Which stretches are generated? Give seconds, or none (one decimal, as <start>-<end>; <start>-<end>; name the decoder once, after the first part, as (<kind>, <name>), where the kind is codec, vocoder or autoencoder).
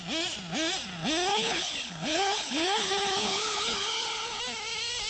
1.3-4.4 (codec, HILCodec)